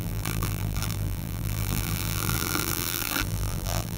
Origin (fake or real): fake